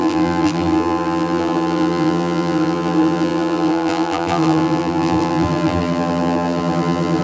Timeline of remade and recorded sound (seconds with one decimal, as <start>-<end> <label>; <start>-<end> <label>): 0.0-7.2 remade